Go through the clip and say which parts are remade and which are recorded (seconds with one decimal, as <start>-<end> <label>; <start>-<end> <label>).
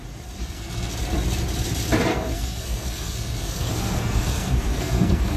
0.0-0.4 recorded; 0.4-0.9 remade; 0.9-2.1 recorded; 2.1-5.4 remade